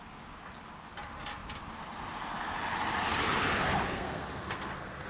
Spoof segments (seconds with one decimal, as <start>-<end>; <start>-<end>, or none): 3.9-5.1